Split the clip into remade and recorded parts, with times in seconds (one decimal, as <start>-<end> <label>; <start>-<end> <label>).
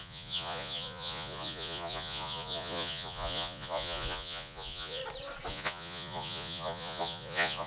0.0-5.0 remade; 5.0-5.5 recorded; 5.5-7.7 remade